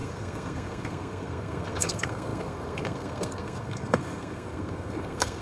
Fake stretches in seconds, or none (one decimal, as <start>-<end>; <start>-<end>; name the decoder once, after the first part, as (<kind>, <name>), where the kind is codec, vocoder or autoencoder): 0.0-5.4 (codec, SNAC)